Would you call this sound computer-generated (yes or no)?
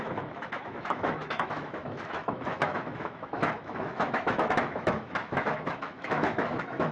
yes